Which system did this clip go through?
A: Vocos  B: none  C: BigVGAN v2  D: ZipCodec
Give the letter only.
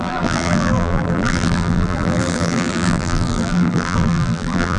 C